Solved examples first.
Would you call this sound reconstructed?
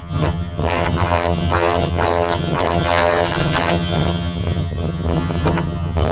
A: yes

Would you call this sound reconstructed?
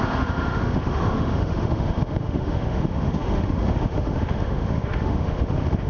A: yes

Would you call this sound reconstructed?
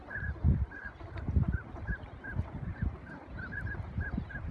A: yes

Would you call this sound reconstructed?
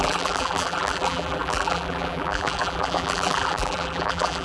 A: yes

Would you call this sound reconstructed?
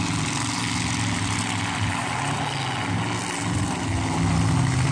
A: no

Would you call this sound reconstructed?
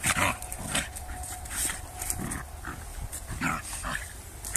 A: no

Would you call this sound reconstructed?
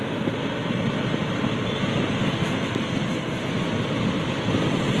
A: yes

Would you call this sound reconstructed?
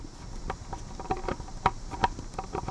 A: no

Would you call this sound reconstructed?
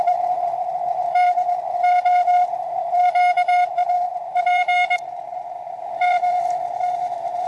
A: yes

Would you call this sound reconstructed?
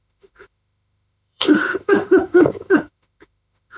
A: yes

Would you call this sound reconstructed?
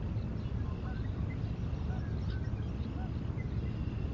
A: no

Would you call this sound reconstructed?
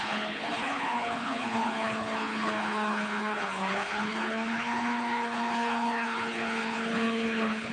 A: yes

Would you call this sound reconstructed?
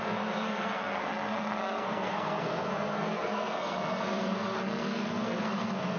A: yes